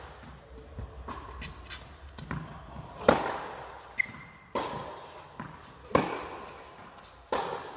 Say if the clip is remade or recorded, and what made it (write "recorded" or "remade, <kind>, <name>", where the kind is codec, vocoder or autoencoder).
recorded